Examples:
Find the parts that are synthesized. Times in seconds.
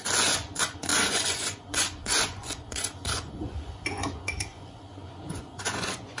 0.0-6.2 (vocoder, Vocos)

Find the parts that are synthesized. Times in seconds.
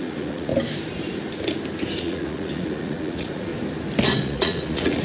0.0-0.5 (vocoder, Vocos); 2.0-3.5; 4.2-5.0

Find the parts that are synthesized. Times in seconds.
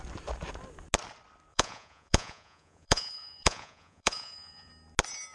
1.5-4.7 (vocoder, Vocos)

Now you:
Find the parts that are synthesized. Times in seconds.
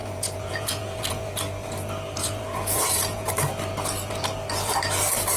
0.0-1.3 (vocoder, Vocos); 2.2-3.3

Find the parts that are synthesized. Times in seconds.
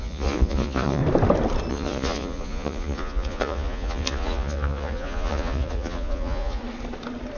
0.0-1.0 (vocoder, Vocos); 1.7-6.6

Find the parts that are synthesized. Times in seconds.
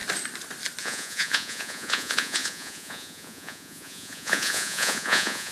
0.8-5.5 (vocoder, Vocos)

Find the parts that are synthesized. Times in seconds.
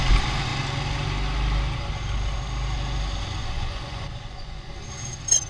3.4-4.7 (vocoder, Vocos)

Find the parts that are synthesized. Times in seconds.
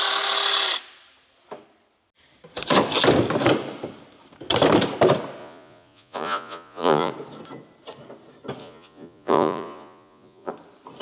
5.4-7.1 (vocoder, Vocos); 8.6-10.5